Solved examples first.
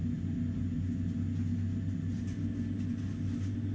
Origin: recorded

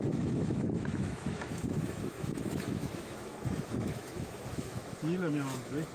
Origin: remade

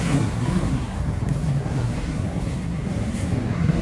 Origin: remade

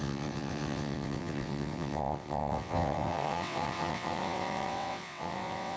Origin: remade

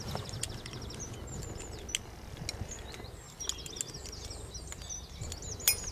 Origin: recorded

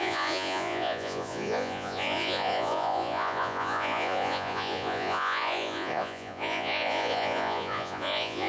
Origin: remade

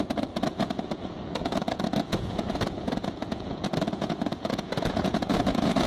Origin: remade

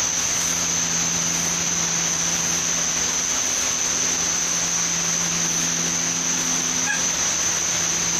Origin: recorded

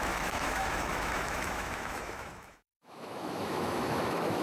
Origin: remade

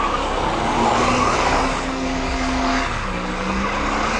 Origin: remade